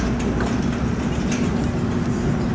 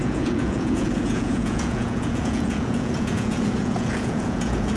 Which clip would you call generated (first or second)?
second